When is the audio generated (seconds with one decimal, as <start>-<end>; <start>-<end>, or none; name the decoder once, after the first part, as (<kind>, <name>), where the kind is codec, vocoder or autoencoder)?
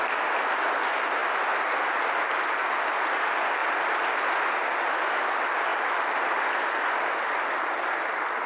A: 1.2-1.7 (vocoder, BigVGAN v2); 3.6-4.4; 5.7-6.8